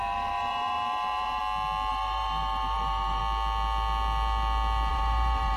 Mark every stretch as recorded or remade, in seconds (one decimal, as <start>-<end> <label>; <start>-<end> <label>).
0.0-1.4 remade; 1.4-1.9 recorded; 1.9-3.2 remade; 3.2-4.9 recorded; 4.9-5.6 remade

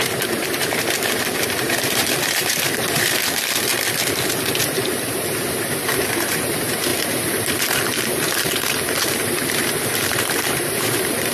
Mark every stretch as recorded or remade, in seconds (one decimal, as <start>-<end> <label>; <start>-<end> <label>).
0.0-3.7 remade; 3.7-4.6 recorded; 4.6-11.3 remade

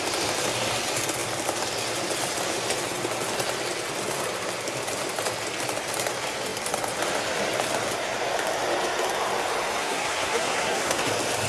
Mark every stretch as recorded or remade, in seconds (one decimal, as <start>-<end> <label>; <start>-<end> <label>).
0.0-9.8 recorded; 9.8-11.1 remade; 11.1-11.5 recorded